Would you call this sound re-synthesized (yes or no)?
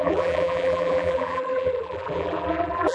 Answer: yes